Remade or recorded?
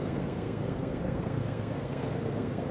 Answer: remade